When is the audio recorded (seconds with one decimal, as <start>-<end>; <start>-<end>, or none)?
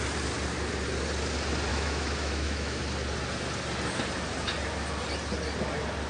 0.0-1.7; 2.8-6.1